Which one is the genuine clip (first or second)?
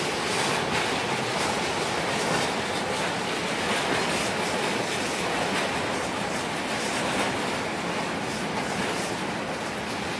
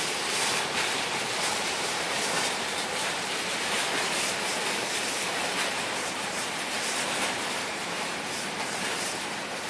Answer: first